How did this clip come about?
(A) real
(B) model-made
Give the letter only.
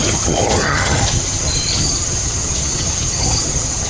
B